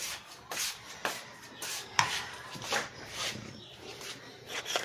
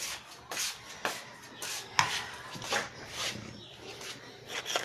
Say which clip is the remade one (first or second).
first